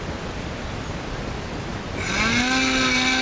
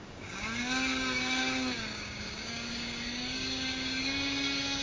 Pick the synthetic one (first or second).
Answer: second